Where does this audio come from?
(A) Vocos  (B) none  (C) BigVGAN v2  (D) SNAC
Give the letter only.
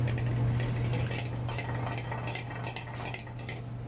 B